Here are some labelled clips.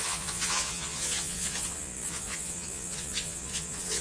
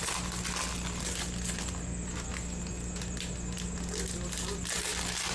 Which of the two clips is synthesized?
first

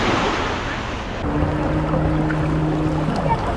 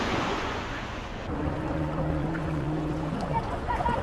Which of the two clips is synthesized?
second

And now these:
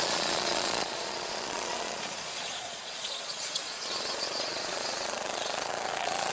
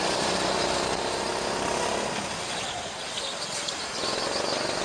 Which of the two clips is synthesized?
first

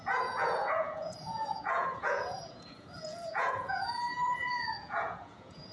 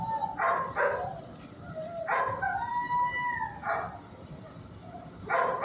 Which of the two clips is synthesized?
first